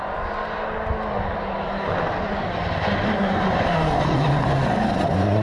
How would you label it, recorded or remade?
recorded